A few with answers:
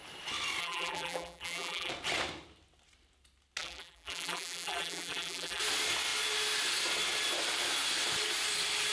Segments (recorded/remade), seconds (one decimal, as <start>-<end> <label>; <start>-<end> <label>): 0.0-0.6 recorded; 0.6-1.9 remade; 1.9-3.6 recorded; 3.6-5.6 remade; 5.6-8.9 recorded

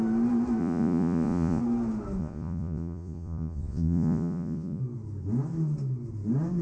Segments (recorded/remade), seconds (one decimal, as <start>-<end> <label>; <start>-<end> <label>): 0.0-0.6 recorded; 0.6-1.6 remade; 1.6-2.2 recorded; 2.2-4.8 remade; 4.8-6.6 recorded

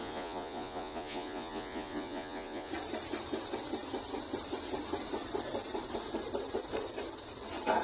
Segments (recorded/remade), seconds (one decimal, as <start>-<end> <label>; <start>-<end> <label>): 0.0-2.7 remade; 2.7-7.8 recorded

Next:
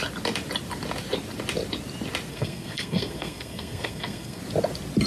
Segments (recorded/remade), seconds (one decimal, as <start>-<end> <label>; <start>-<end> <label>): 0.0-2.3 recorded; 2.3-4.4 remade; 4.4-5.1 recorded

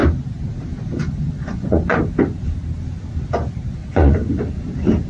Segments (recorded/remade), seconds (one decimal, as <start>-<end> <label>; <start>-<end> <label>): 0.0-1.0 recorded; 1.0-2.0 remade; 2.0-3.8 recorded; 3.8-4.3 remade; 4.3-5.1 recorded

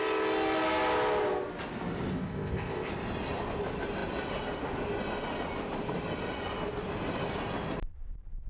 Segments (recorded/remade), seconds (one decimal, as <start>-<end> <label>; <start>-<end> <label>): 0.0-2.1 recorded; 2.1-2.9 remade; 2.9-8.5 recorded

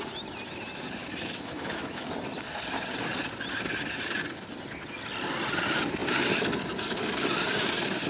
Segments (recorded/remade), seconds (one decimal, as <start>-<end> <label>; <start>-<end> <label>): 0.0-1.0 recorded; 1.0-2.1 remade; 2.1-8.1 recorded